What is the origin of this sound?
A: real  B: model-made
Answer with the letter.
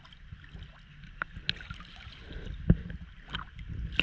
A